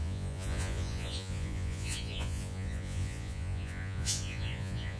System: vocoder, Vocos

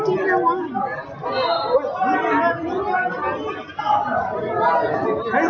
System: none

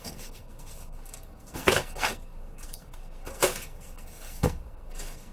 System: codec, SNAC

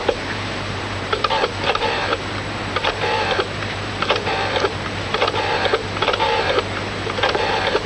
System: vocoder, BigVGAN v2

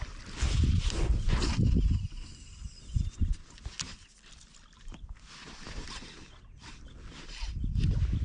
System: none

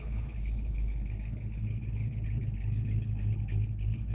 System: codec, HILCodec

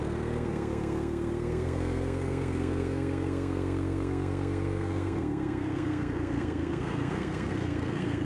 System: codec, SNAC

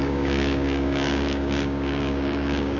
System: codec, DAC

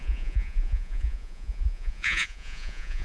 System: vocoder, Vocos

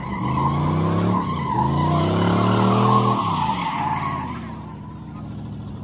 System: none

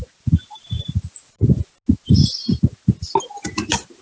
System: none